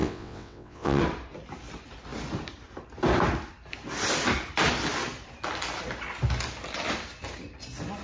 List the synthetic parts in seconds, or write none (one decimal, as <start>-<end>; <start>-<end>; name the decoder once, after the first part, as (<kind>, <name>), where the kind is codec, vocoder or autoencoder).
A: 0.0-1.0 (vocoder, WaveNeXt)